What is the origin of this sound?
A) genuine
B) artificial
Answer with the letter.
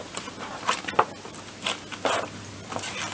A